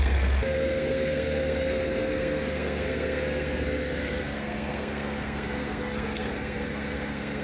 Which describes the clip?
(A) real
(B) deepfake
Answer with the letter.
B